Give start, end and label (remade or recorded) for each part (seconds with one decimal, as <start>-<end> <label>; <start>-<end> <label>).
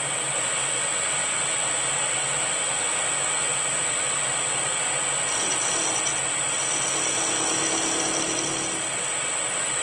0.0-9.8 recorded